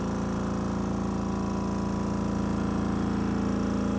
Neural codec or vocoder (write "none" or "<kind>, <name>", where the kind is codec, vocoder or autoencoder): none